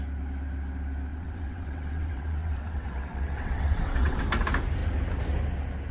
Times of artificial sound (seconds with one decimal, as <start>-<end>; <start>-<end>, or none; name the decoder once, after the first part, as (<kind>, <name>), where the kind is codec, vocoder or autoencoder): 1.1-4.2 (vocoder, WaveNeXt)